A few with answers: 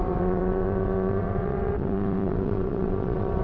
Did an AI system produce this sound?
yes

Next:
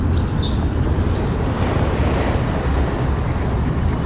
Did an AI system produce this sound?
no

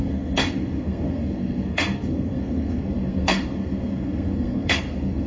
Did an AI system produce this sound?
yes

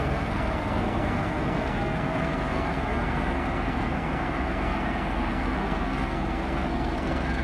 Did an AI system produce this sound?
yes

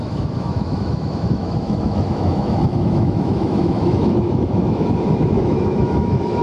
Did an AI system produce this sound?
yes